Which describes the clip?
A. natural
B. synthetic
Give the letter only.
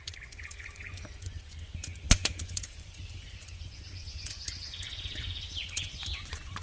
B